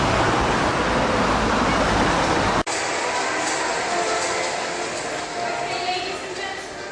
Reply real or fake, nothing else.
real